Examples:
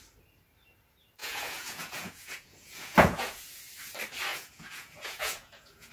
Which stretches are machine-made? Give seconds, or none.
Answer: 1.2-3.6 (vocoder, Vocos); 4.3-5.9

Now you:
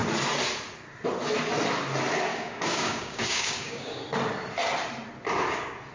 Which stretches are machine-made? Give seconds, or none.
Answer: 2.3-4.0 (codec, DAC)

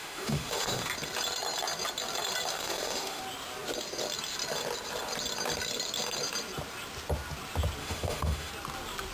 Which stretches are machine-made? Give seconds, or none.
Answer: 0.0-0.9 (autoencoder, DAC-VAE); 2.5-3.2; 7.8-8.5

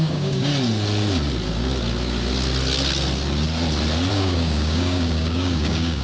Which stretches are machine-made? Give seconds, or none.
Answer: 0.0-0.5 (codec, DAC); 4.1-6.0